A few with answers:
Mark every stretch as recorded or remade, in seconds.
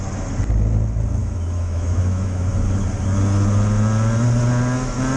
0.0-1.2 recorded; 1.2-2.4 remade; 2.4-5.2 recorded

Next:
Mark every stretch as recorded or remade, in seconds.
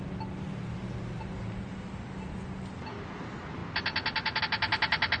0.0-5.2 recorded